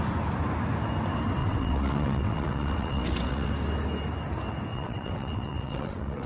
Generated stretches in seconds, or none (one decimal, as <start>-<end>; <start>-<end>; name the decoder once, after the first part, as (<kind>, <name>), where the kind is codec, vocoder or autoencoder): 1.4-3.5 (vocoder, WaveNeXt); 4.7-6.3